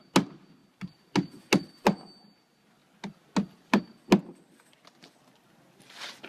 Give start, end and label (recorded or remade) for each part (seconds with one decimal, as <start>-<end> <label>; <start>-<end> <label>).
0.0-6.3 recorded